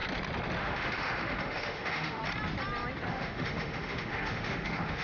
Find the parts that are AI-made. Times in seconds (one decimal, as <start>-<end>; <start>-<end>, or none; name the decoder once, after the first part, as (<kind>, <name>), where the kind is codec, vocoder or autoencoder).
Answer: 0.6-2.2 (autoencoder, DAC-VAE); 3.1-5.0